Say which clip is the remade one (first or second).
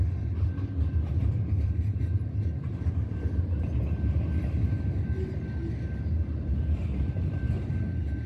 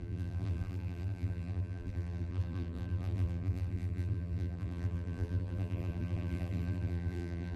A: second